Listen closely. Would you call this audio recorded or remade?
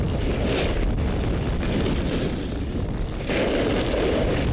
recorded